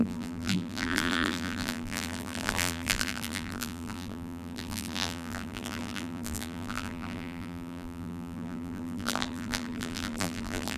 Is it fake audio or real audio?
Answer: fake